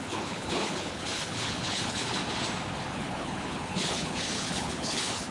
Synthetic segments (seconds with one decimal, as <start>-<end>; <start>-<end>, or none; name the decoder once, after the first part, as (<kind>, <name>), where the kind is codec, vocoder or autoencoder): 0.0-2.2 (codec, HILCodec); 2.9-5.3